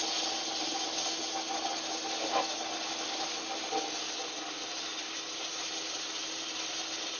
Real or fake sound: real